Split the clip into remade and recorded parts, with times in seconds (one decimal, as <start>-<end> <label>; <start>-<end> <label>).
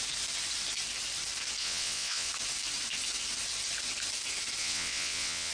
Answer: 0.0-1.6 recorded; 1.6-2.3 remade; 2.3-4.6 recorded; 4.6-5.5 remade